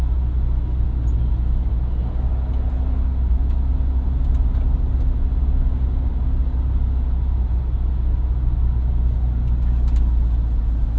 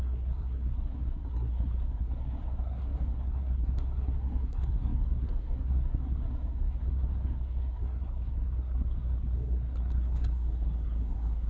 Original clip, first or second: first